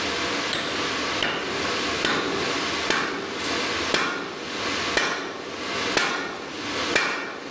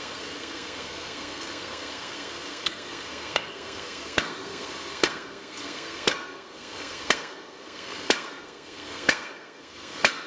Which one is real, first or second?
first